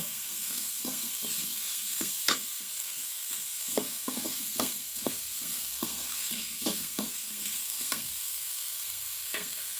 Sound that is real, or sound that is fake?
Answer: fake